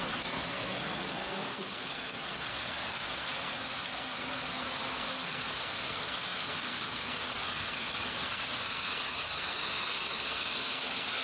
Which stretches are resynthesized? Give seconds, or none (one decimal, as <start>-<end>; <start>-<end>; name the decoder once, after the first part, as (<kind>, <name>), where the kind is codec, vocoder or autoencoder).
0.0-11.2 (codec, SNAC)